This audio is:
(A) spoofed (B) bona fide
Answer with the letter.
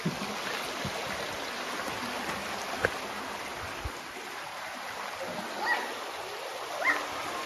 B